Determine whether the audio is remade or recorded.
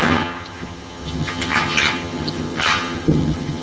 remade